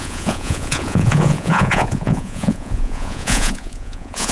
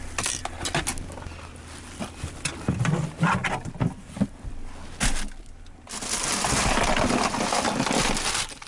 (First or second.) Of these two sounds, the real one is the second